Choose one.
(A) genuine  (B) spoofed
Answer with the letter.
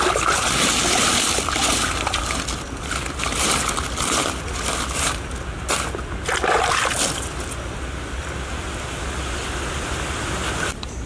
A